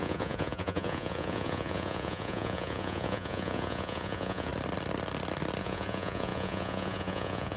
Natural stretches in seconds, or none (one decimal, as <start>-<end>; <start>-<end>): 4.5-5.6

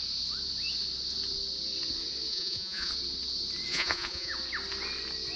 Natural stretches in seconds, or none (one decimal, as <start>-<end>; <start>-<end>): 0.0-2.3; 2.9-3.7; 4.3-5.4

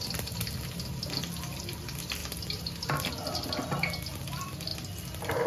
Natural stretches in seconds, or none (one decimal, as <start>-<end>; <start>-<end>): 0.0-5.5

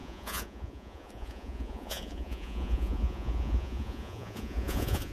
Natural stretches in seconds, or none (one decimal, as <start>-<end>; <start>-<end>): none

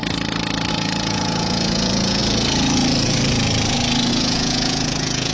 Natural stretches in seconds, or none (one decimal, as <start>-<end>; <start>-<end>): 0.0-0.7; 2.2-4.1

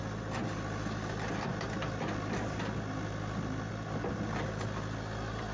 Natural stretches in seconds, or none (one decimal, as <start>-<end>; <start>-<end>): 0.0-5.5